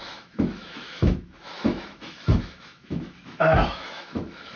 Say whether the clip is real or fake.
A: fake